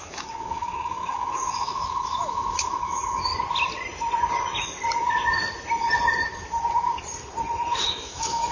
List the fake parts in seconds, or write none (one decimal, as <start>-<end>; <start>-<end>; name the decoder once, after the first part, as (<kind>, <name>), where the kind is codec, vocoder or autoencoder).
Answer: 0.0-3.3 (autoencoder, DAC-VAE); 7.8-8.5